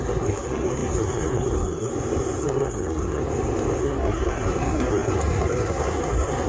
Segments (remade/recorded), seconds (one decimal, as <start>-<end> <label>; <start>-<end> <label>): 0.0-1.9 remade; 1.9-2.4 recorded; 2.4-3.2 remade; 3.2-3.8 recorded; 3.8-6.5 remade